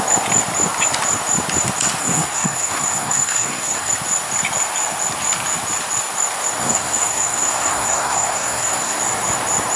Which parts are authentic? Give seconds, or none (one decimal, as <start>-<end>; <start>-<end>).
0.0-2.0; 3.9-6.6; 9.0-9.8